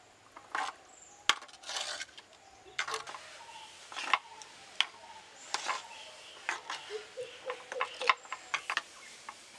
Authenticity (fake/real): real